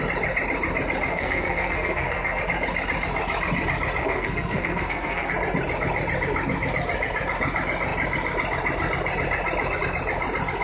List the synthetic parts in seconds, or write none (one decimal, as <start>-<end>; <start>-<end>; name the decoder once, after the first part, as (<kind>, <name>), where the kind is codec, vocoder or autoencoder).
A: 1.1-2.4 (codec, SNAC); 4.0-5.3